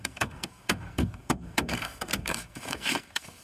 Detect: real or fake fake